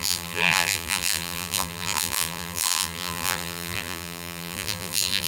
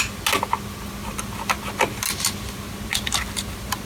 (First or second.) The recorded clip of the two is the second